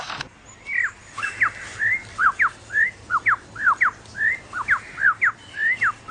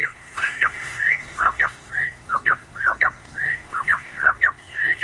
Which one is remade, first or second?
second